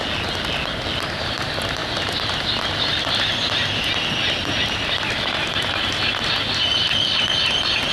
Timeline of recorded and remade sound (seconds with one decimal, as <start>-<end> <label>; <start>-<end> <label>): 0.0-7.9 recorded